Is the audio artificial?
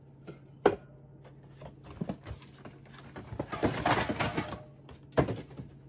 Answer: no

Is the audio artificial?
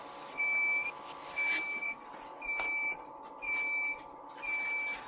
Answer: no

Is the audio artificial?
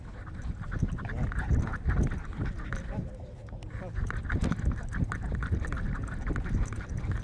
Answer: no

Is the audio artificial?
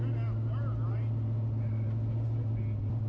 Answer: no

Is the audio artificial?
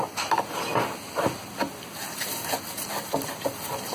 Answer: no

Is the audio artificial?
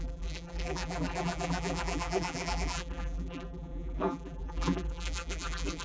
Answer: yes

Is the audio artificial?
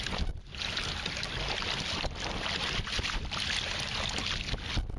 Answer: no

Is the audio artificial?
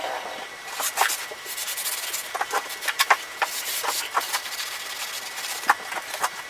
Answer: no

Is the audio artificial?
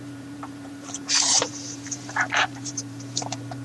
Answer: yes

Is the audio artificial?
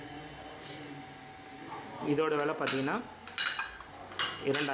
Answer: no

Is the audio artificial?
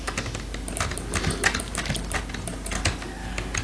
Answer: no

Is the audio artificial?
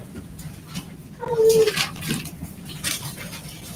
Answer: yes